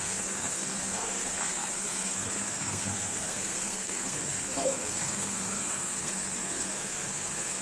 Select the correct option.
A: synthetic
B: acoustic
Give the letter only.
A